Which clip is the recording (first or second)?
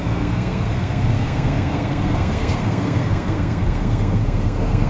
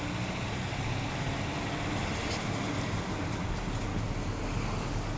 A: second